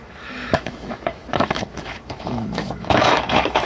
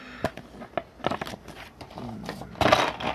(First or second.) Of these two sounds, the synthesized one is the first